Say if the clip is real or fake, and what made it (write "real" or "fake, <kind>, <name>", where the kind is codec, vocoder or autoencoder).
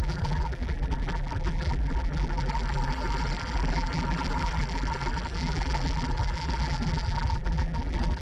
fake, vocoder, BigVGAN v2